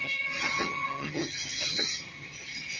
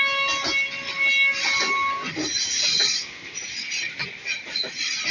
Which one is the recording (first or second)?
second